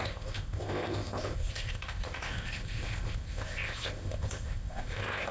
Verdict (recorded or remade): remade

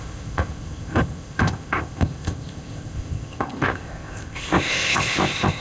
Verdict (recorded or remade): remade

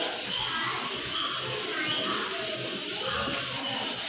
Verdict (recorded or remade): recorded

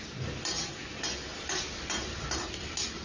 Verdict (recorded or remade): recorded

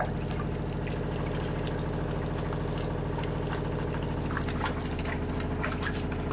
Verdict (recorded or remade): recorded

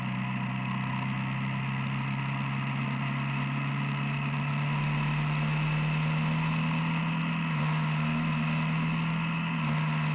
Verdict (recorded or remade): recorded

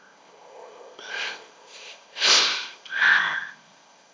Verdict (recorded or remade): remade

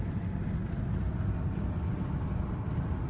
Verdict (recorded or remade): recorded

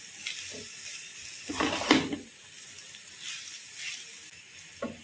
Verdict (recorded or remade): recorded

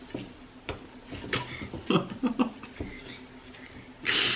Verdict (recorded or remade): recorded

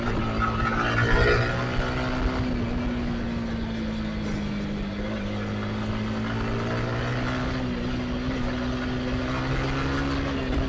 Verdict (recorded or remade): recorded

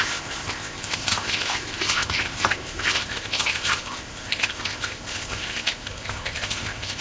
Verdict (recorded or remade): remade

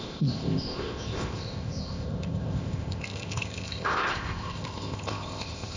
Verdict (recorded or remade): remade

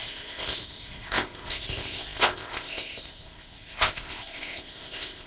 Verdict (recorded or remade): remade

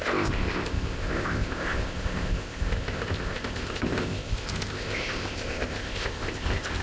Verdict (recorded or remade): remade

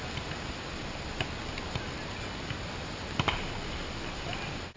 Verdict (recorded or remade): recorded